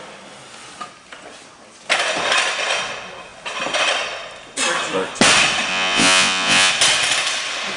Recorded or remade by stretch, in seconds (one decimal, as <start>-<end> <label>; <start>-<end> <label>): 0.0-5.7 recorded; 5.7-6.7 remade; 6.7-7.8 recorded